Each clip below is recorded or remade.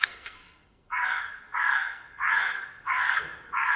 remade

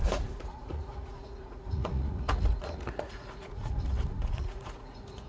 remade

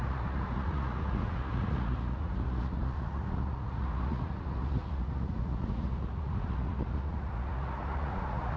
remade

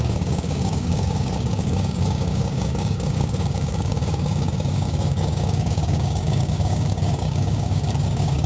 remade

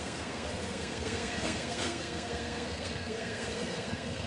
remade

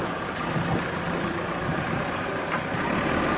remade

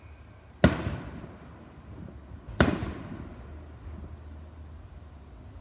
recorded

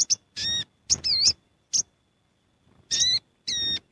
recorded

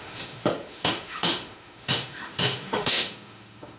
remade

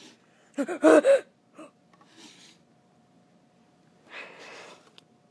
recorded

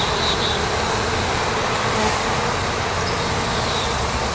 recorded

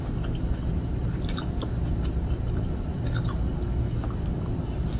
recorded